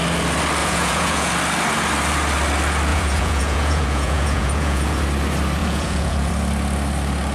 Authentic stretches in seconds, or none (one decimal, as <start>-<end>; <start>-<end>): 0.0-0.6; 1.3-2.9; 5.0-5.6; 6.3-7.3